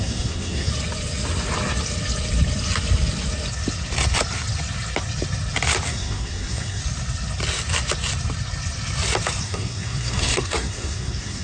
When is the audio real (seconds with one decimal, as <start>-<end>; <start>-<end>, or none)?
0.7-5.9; 6.8-9.4